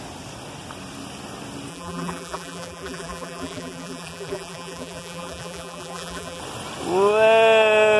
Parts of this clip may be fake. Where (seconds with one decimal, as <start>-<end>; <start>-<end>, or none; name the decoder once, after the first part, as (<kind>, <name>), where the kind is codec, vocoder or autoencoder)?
1.7-6.4 (vocoder, BigVGAN v2)